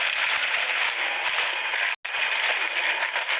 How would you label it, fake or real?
real